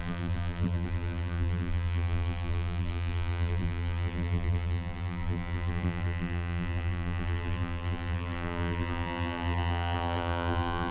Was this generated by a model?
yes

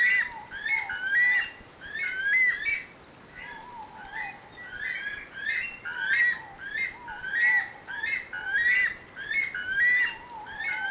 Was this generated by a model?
no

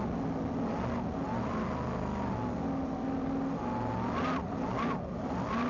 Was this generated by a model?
no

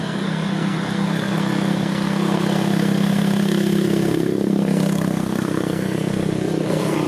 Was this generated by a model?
yes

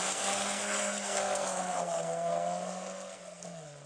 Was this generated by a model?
yes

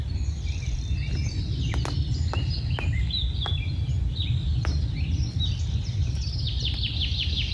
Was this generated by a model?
no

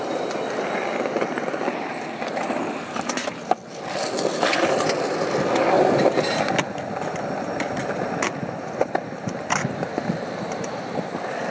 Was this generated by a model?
no